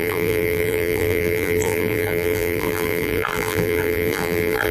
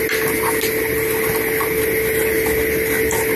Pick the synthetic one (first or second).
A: first